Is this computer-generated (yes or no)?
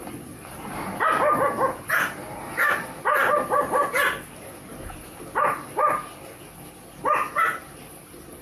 no